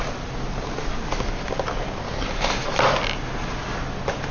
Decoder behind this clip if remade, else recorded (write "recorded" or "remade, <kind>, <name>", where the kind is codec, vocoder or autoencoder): recorded